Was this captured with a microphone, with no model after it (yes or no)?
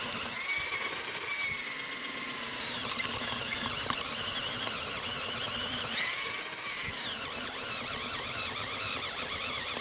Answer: no